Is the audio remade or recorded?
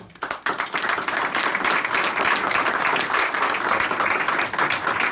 recorded